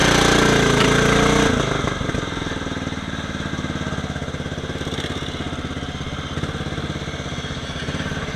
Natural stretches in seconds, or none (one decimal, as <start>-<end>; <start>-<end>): 0.0-8.4

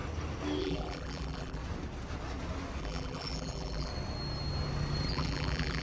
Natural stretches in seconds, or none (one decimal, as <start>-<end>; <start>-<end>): 0.0-0.6; 1.6-2.8; 3.9-5.1

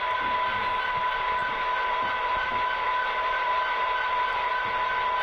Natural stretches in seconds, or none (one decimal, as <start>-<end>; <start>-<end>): 0.0-1.4; 4.5-5.2

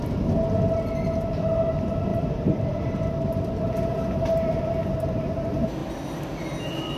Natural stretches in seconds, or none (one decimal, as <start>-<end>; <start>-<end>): 0.0-2.1; 4.7-5.8